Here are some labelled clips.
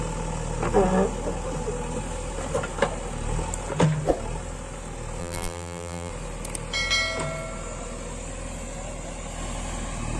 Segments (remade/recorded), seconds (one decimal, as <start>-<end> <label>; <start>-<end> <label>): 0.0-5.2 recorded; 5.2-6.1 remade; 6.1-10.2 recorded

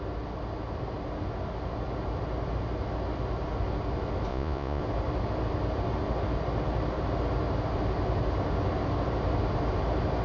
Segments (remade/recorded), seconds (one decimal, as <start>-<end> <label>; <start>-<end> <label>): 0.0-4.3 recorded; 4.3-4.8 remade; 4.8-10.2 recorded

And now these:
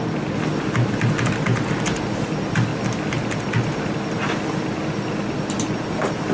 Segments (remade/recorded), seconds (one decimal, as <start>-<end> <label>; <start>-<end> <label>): 0.0-6.3 recorded

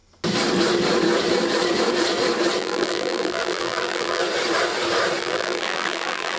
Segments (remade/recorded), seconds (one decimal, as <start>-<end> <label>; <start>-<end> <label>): 0.0-2.6 recorded; 2.6-4.2 remade; 4.2-5.2 recorded; 5.2-6.4 remade